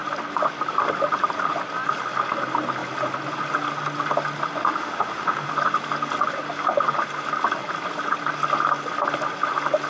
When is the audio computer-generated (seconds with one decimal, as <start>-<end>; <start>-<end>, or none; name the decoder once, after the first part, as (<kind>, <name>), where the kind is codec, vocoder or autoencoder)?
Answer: 4.6-5.5 (autoencoder, DAC-VAE)